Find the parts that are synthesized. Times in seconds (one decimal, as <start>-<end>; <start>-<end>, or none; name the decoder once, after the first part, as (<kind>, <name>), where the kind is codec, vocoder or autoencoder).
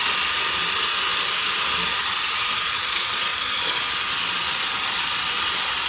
0.0-1.9 (vocoder, BigVGAN v2); 2.7-5.9